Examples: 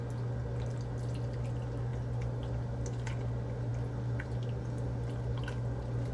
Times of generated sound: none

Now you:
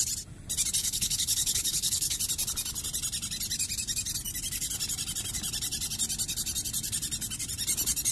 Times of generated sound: 0.8-2.2 (codec, HILCodec)

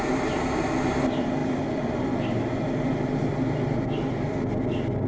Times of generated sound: none

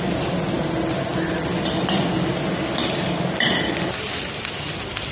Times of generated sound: none

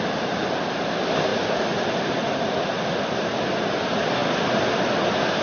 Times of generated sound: none

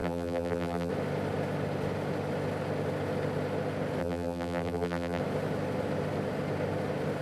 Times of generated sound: 0.0-0.9 (vocoder, BigVGAN v2); 4.0-5.2